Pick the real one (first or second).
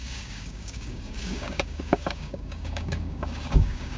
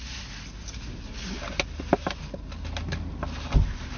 second